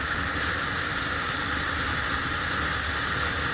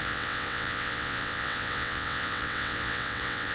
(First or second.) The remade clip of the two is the second